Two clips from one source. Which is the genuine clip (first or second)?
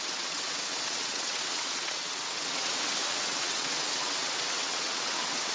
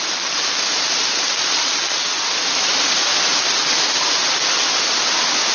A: second